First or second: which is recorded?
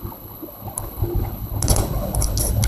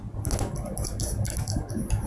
second